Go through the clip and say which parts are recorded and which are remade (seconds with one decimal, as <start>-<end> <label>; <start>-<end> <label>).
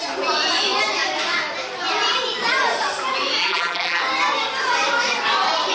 0.0-3.4 recorded; 3.4-4.0 remade; 4.0-5.7 recorded